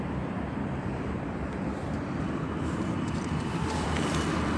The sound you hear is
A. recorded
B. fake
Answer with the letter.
B